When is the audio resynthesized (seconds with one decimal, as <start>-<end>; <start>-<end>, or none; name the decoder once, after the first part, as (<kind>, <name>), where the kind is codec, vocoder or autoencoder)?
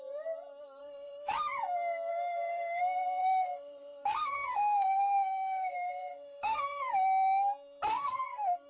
0.8-1.3 (codec, SNAC); 2.1-2.8; 3.2-6.9; 7.9-8.7